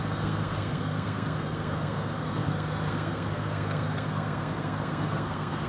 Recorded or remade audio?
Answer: remade